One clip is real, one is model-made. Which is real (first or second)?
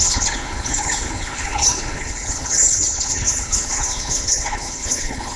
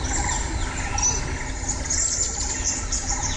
second